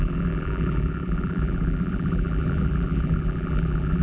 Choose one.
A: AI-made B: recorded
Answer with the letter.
A